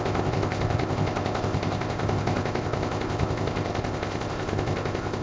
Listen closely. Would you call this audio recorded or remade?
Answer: remade